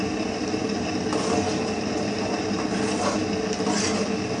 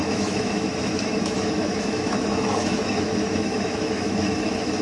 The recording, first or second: first